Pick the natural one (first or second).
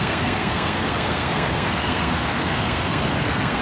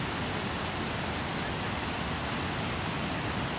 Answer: second